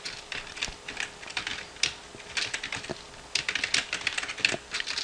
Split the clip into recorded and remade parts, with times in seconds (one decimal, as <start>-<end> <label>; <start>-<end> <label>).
0.0-5.0 recorded